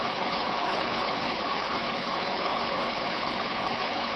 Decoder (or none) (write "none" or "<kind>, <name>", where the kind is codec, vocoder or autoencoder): codec, HILCodec